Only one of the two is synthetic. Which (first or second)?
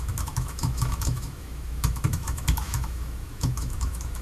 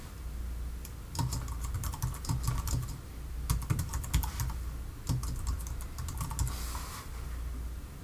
first